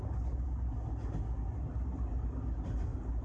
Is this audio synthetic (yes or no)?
no